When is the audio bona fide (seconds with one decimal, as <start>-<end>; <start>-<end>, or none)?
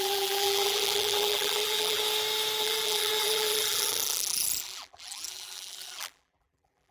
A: 2.0-2.6